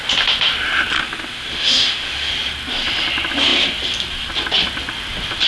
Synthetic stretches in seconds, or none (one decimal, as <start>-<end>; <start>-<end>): 1.0-2.3

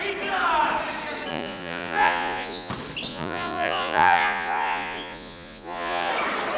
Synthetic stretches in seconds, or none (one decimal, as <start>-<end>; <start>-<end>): 1.3-2.7; 3.1-6.1

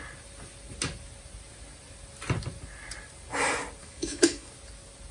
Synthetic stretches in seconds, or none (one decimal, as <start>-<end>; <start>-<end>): 3.8-4.5

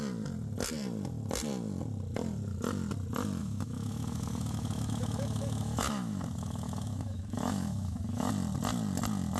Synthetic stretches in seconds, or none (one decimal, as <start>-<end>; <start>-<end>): 3.4-8.3

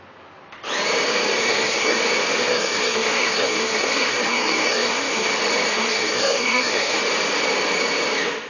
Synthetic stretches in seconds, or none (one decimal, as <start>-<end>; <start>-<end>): 1.4-2.0; 2.4-5.3; 5.7-7.0

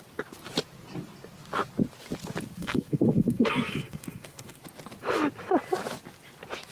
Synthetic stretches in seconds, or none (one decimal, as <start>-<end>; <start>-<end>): 2.6-4.6

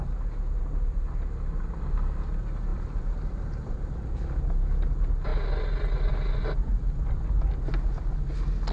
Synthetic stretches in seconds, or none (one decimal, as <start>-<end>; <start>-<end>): 2.7-4.1

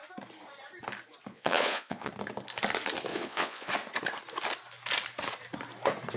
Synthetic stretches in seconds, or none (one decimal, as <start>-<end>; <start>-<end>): 1.3-2.1; 3.1-3.7